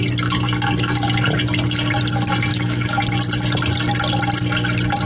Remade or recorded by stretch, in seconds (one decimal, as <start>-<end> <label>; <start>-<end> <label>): 0.0-2.5 recorded; 2.5-3.0 remade; 3.0-5.1 recorded